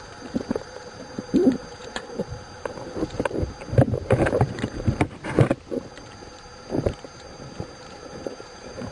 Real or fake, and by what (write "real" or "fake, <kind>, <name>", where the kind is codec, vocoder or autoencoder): fake, vocoder, BigVGAN v2